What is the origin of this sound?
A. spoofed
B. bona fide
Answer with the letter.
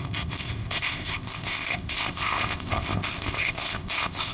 A